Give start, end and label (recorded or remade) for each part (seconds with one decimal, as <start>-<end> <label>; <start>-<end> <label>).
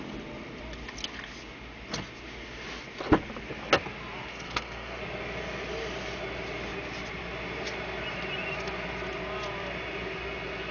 0.0-4.3 recorded; 4.3-5.0 remade; 5.0-10.7 recorded